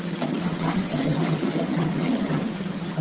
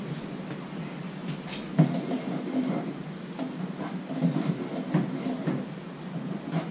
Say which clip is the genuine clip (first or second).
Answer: second